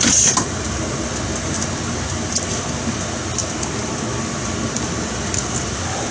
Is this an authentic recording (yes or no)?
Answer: yes